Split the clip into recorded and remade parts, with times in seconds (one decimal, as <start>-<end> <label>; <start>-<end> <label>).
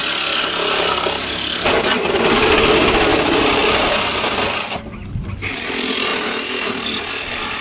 0.0-7.6 recorded